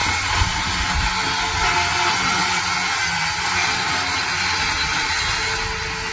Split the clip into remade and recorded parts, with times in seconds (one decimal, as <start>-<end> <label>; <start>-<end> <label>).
0.0-3.6 recorded; 3.6-4.2 remade; 4.2-6.1 recorded